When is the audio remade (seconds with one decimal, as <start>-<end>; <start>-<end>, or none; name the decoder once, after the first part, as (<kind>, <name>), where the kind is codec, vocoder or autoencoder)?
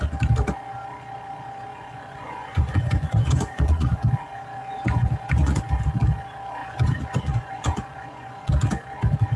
1.7-4.0 (vocoder, Vocos); 4.6-5.6; 6.6-8.5